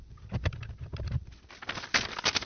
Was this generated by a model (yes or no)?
no